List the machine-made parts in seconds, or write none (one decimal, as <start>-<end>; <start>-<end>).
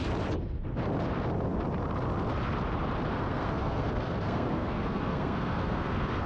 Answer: 3.1-6.3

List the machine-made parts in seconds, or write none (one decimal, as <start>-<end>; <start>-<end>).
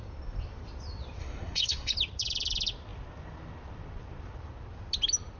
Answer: 1.2-1.9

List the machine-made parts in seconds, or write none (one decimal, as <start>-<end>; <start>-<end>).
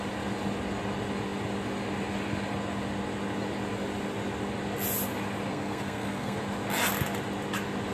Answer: 5.5-6.4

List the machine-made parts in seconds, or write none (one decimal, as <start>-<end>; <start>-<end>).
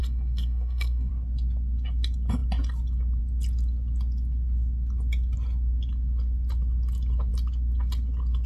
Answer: 0.0-1.1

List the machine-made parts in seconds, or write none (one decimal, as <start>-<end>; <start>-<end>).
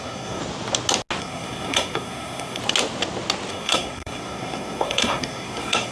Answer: 0.0-0.4; 1.2-2.6; 3.5-5.9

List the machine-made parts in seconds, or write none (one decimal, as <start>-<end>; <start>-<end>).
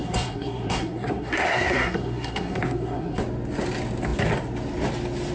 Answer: 0.0-3.2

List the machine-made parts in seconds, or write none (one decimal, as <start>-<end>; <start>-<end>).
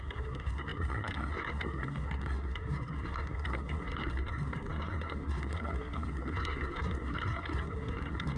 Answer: 0.0-8.4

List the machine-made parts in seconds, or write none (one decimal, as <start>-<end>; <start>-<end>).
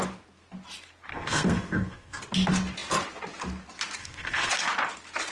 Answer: 1.1-2.2; 4.0-4.5